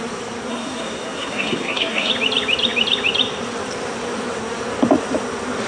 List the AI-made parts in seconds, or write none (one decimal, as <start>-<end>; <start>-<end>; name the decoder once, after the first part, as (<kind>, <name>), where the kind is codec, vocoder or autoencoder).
0.5-2.1 (codec, SNAC)